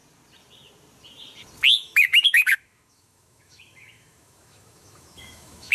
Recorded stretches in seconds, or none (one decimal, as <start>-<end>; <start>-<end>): 0.0-1.7